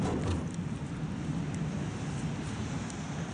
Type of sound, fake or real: real